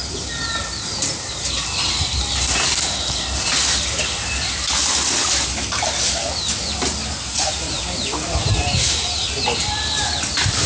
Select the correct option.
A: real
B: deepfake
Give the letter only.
A